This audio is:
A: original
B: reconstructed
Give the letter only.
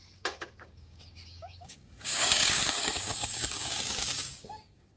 B